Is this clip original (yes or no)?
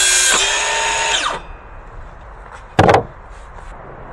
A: yes